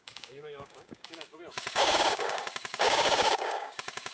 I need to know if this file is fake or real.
fake